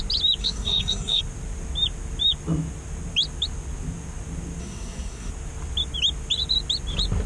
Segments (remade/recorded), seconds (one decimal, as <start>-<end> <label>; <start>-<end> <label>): 0.0-0.4 recorded; 0.4-1.2 remade; 1.2-4.6 recorded; 4.6-5.3 remade; 5.3-7.3 recorded